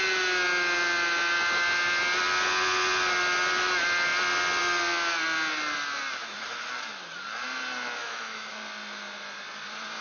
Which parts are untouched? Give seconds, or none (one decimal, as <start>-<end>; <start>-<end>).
0.0-6.2; 6.7-8.0; 8.5-10.0